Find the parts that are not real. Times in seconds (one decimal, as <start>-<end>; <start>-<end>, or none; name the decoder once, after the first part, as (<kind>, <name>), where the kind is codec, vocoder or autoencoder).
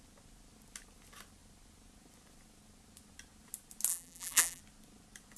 3.9-4.6 (vocoder, BigVGAN v2)